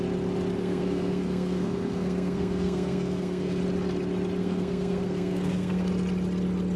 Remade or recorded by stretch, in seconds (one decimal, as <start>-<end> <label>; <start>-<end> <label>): 0.0-0.6 recorded; 0.6-3.6 remade; 3.6-4.4 recorded; 4.4-5.9 remade; 5.9-6.8 recorded